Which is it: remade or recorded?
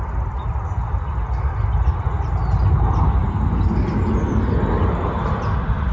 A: recorded